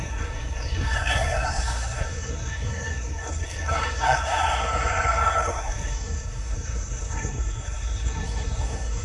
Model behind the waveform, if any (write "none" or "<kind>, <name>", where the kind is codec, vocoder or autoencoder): codec, SNAC